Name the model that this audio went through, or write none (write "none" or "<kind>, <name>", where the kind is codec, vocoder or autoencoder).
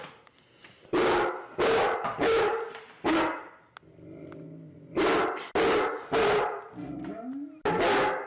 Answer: none